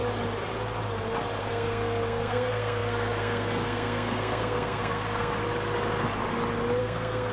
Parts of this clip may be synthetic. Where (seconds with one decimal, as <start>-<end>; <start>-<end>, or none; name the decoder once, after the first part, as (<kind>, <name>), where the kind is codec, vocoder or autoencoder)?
1.4-5.4 (codec, SNAC); 6.8-7.3